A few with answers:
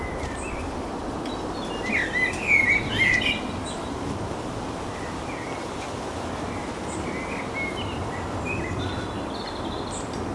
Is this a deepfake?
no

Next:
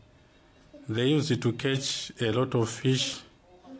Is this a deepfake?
no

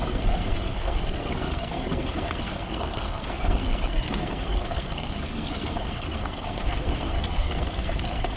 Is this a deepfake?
yes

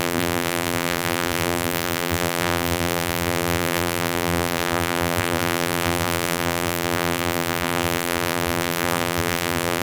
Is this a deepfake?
yes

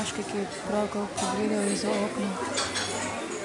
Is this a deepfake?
no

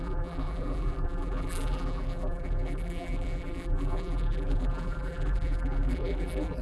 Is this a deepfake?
yes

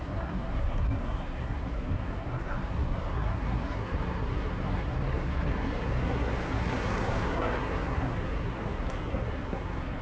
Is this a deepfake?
yes